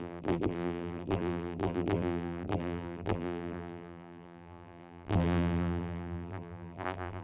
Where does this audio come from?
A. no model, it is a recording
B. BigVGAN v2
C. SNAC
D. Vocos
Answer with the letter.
B